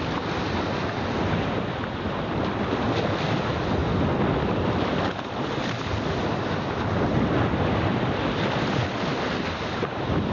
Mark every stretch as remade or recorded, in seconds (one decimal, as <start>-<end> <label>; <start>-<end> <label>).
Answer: 0.0-10.3 recorded